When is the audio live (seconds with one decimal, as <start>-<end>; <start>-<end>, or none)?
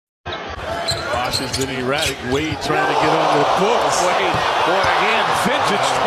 0.0-1.7; 2.7-5.1